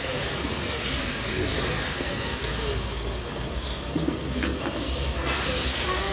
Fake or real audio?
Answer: fake